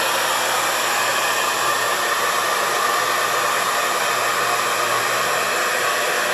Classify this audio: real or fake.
real